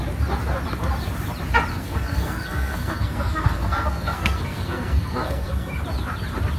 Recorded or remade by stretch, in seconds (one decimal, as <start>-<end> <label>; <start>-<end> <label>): 0.0-1.7 recorded; 1.7-5.7 remade; 5.7-6.6 recorded